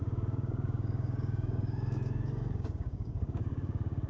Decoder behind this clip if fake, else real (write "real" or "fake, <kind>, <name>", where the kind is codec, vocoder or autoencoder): fake, codec, DAC